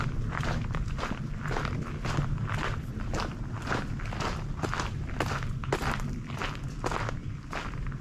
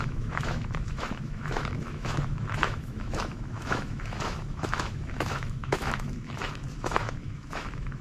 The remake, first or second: second